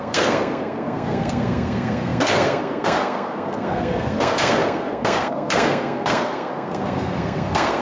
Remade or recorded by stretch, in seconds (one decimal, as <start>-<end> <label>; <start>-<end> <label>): 0.0-7.8 remade